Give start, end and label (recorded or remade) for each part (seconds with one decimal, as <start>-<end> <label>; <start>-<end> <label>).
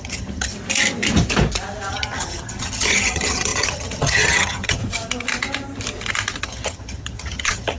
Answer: 0.0-0.5 remade; 0.5-1.9 recorded; 1.9-4.8 remade; 4.8-6.4 recorded; 6.4-7.8 remade